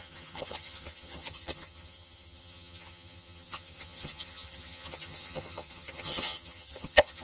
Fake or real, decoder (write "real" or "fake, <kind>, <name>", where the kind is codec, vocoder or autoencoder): fake, vocoder, HiFi-GAN